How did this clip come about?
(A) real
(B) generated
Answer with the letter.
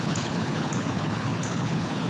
B